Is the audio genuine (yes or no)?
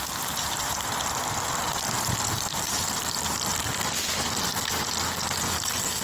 yes